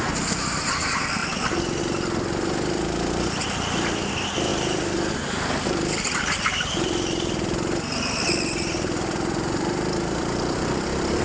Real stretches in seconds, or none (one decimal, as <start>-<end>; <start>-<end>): 1.2-1.8